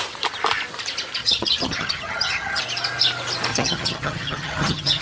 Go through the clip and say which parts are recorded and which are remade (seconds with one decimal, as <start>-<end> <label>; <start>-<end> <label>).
0.0-1.2 recorded; 1.2-2.6 remade; 2.6-3.5 recorded; 3.5-5.0 remade